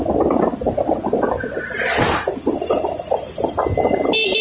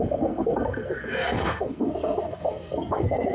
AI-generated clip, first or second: second